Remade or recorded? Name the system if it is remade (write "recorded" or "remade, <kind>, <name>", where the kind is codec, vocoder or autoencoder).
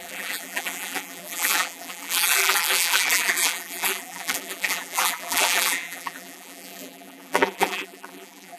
remade, vocoder, BigVGAN v2